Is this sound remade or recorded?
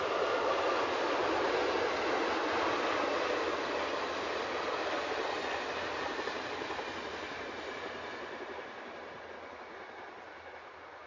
recorded